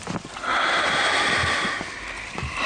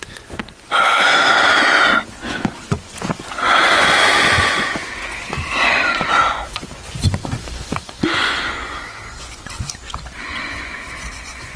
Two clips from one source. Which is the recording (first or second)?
first